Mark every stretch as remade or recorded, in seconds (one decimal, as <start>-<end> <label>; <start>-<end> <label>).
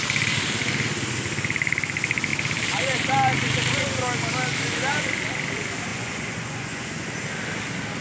0.0-5.9 recorded; 5.9-7.1 remade; 7.1-8.0 recorded